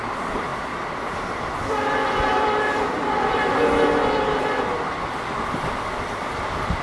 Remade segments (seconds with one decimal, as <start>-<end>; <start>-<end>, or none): 0.0-6.8